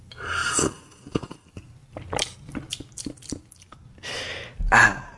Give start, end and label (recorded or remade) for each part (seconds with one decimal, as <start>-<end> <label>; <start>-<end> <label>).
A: 0.0-5.2 recorded